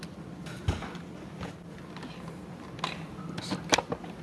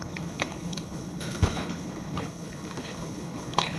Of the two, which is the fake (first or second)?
second